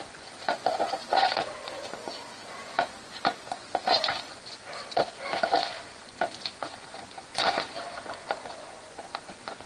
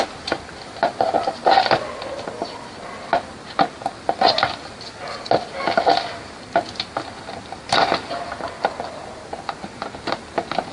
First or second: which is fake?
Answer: first